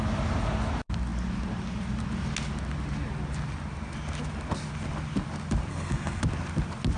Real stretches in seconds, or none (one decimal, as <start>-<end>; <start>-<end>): 0.0-5.7; 6.2-7.0